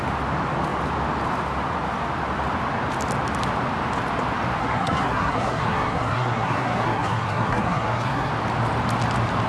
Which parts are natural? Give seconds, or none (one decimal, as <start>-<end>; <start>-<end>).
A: 0.0-4.6; 8.3-9.5